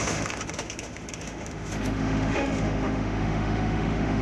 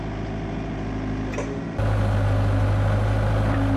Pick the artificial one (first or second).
first